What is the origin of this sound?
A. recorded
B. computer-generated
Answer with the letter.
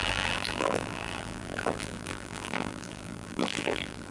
B